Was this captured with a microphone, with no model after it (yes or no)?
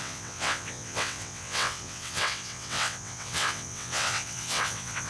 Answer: no